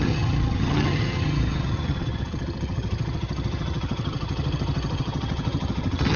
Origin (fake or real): fake